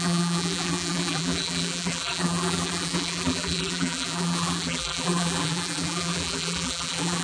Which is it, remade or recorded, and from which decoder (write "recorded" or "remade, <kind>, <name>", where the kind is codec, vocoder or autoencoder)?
remade, vocoder, BigVGAN v2